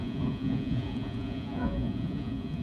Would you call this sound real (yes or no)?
no